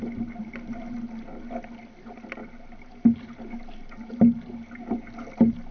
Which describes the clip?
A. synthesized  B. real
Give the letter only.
B